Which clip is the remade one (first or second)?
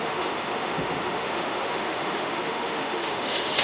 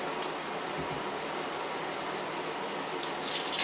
first